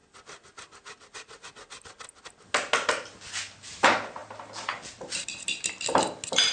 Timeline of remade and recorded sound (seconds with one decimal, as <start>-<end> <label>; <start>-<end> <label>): 0.0-6.5 recorded